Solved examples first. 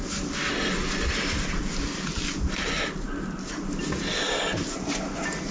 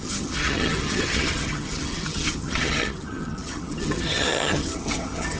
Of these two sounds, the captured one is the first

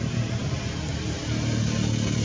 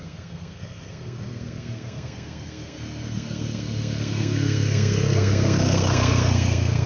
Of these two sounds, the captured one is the first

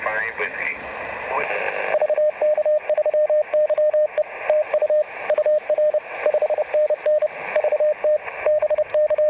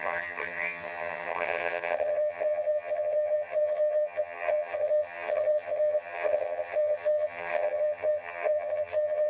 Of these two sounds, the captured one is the first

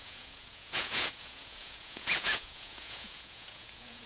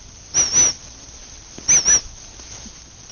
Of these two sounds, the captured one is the second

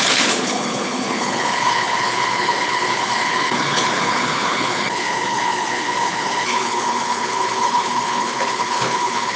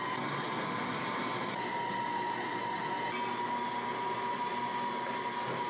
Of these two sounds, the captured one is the second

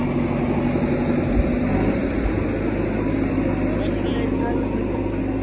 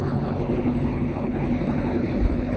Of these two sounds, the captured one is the first